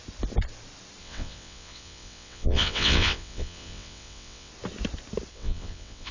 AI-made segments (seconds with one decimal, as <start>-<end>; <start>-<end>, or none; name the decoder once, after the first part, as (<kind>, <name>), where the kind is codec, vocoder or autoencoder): 1.0-4.5 (vocoder, WaveNeXt); 5.3-6.1